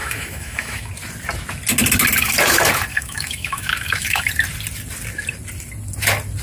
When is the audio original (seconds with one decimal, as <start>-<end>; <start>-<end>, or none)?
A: 0.9-2.9; 4.3-6.4